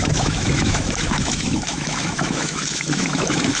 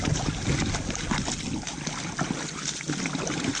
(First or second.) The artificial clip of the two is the first